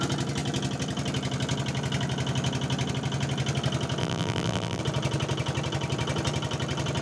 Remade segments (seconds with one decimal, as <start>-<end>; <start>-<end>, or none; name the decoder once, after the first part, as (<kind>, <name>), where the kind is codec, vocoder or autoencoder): 4.0-4.8 (vocoder, BigVGAN v2)